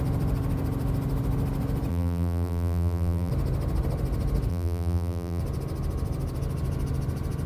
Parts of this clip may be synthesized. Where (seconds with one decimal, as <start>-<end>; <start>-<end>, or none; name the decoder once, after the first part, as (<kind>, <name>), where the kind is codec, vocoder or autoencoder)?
1.9-3.3 (vocoder, BigVGAN v2); 4.5-5.4